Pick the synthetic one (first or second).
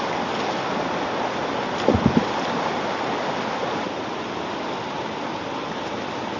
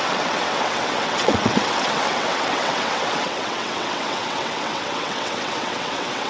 second